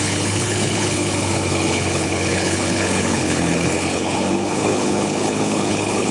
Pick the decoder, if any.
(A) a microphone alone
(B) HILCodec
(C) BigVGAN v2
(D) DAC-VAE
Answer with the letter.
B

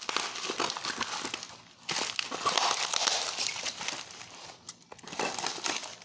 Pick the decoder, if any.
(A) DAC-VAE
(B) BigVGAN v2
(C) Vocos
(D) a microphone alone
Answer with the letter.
D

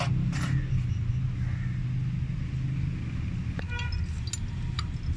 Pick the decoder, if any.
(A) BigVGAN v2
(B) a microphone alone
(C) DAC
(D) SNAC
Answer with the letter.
B